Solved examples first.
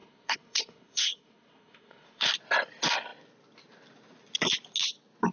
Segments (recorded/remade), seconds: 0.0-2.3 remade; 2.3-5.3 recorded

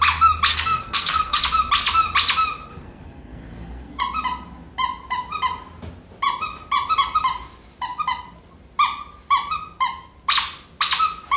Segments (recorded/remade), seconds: 0.0-0.5 recorded; 0.5-1.4 remade; 1.4-2.7 recorded; 2.7-4.0 remade; 4.0-11.4 recorded